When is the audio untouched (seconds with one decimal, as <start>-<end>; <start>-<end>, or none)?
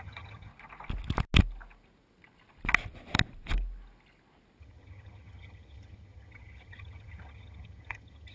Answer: 0.5-4.6